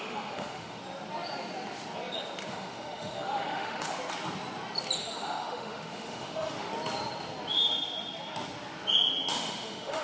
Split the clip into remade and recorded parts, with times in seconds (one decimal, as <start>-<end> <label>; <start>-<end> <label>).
0.0-0.8 remade; 0.8-2.5 recorded; 2.5-4.0 remade; 4.0-5.0 recorded; 5.0-6.7 remade; 6.7-9.3 recorded; 9.3-10.0 remade